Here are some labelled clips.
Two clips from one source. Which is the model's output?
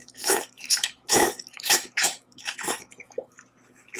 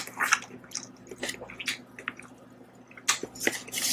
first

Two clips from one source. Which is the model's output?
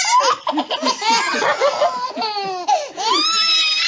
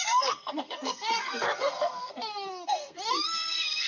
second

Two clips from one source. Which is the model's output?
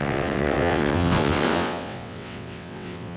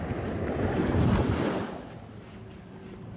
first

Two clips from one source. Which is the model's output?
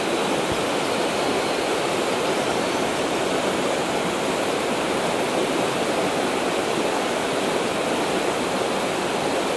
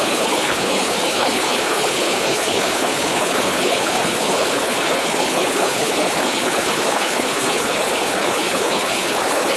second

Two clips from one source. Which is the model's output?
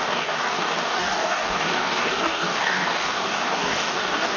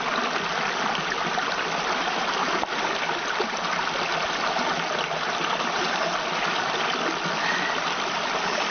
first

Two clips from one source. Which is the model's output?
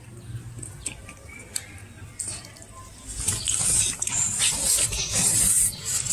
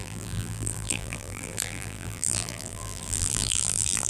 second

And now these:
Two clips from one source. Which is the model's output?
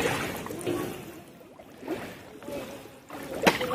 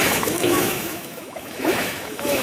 second